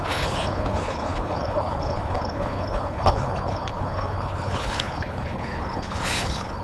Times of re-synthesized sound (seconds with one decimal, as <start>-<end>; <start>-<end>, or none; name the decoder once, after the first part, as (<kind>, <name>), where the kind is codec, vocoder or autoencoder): 0.0-6.6 (codec, HILCodec)